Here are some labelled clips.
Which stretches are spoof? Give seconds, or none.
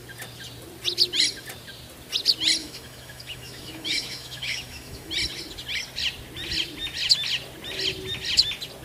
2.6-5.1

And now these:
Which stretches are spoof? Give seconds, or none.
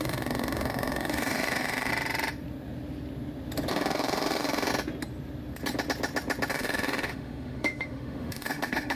0.0-1.9; 3.7-4.7; 6.5-8.9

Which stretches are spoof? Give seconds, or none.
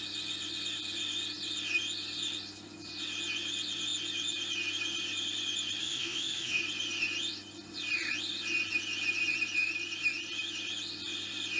5.8-6.6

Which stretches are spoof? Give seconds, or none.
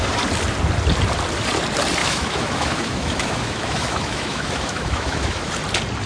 2.0-5.5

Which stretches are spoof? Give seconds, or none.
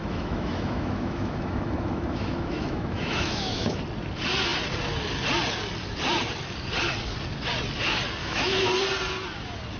0.0-3.8; 8.2-8.7